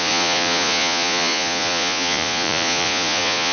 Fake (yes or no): yes